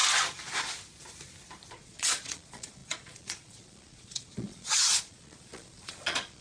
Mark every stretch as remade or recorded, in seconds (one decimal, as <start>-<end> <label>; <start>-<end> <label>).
0.0-1.7 recorded; 1.7-6.4 remade